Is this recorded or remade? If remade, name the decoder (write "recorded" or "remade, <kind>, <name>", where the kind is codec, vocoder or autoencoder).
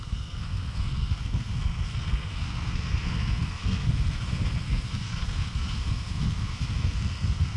remade, codec, SNAC